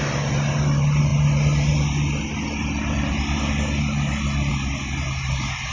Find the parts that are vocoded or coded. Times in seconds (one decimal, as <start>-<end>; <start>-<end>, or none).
none